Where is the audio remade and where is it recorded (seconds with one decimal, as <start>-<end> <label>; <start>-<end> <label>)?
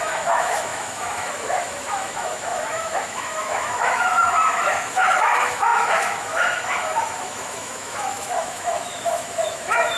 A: 0.0-10.0 remade